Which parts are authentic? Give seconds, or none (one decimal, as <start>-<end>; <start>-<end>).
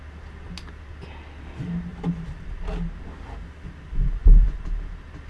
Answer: 0.0-5.3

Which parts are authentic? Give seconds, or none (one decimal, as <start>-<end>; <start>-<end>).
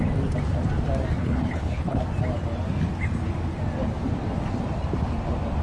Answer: 0.0-1.2; 2.0-5.6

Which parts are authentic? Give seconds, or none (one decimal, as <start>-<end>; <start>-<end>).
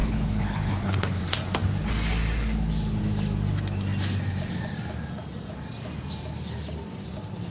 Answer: 1.2-7.5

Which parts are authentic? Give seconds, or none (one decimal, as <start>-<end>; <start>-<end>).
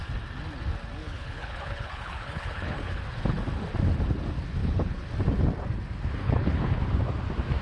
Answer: 0.0-1.0; 3.0-4.6; 5.1-6.2; 6.8-7.6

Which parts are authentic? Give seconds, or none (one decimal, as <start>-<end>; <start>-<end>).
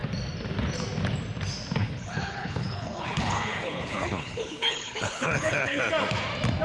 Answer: 0.0-1.8; 5.8-6.6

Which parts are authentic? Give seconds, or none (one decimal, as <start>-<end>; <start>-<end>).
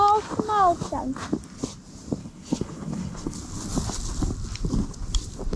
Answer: 0.0-2.2; 3.4-5.6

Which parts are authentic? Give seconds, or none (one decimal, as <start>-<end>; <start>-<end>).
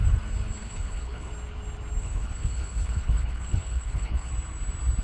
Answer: 0.0-0.6; 1.3-2.0; 4.3-5.0